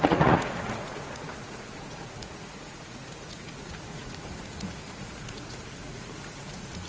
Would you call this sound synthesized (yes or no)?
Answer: yes